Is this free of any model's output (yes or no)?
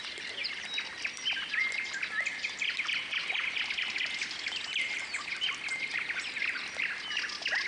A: yes